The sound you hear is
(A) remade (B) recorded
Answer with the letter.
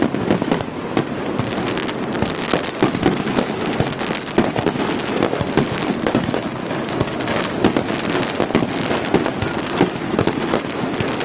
B